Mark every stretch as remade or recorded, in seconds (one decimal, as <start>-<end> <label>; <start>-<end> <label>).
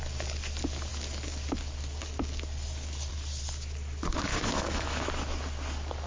0.0-4.3 recorded; 4.3-5.1 remade; 5.1-6.1 recorded